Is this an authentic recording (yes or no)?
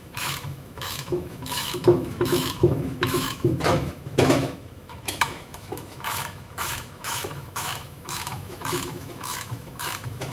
no